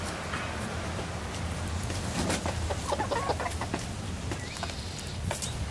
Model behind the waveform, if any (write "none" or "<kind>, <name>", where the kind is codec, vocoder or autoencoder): none